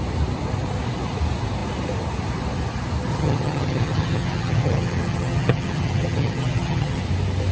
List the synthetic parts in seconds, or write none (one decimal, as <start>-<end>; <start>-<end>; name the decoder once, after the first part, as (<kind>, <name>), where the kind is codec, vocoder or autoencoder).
3.1-7.0 (vocoder, HiFi-GAN)